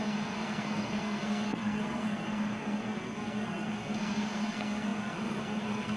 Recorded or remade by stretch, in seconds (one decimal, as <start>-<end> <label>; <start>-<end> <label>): 0.0-6.0 remade